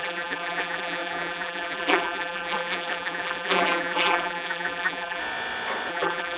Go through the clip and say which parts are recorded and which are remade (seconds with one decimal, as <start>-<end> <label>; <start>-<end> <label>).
0.0-5.2 remade; 5.2-5.9 recorded; 5.9-6.4 remade